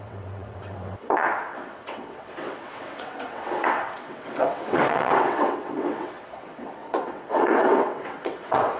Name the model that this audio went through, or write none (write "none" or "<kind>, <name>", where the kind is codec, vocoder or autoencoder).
vocoder, WaveNeXt